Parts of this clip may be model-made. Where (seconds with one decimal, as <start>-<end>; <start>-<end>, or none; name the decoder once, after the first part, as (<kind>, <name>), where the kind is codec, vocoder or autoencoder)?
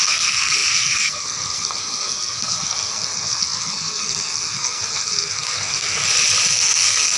0.0-6.0 (codec, SNAC); 6.5-7.2